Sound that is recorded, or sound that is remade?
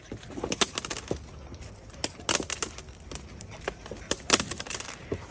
recorded